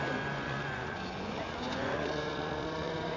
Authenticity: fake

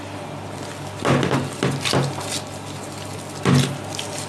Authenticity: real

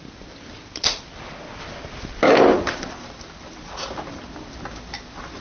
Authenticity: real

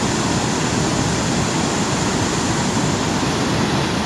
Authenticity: real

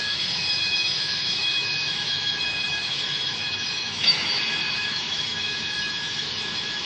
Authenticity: fake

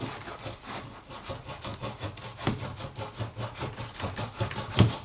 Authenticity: real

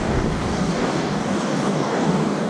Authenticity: fake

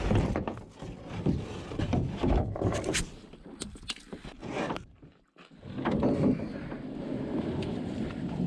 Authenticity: fake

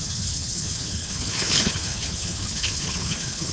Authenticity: fake